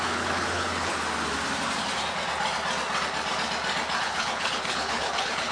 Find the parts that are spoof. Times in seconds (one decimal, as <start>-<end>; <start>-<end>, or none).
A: 0.0-0.9; 4.0-5.5